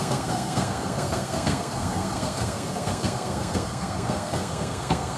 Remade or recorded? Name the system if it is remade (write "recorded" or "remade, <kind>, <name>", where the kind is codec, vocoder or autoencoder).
remade, codec, SNAC